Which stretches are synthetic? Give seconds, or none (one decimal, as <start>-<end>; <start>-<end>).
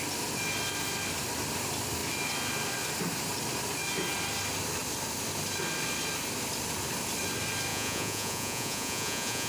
7.7-9.5